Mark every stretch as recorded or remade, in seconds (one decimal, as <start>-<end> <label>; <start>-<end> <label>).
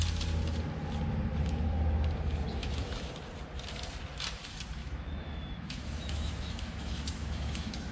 0.0-2.6 recorded; 2.6-3.1 remade; 3.1-4.8 recorded; 4.8-7.9 remade